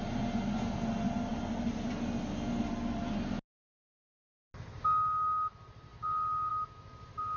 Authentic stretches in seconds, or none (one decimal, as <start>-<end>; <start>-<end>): 0.0-7.4